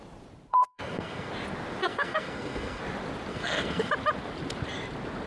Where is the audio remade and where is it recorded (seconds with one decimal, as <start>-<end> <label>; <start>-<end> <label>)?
0.0-0.5 recorded; 0.5-1.3 remade; 1.3-1.8 recorded; 1.8-2.8 remade; 2.8-3.3 recorded; 3.3-3.9 remade; 3.9-5.3 recorded